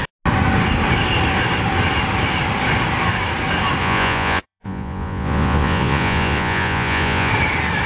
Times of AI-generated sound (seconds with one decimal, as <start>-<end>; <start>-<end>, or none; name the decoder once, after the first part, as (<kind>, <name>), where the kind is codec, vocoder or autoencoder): 3.8-7.3 (vocoder, Vocos)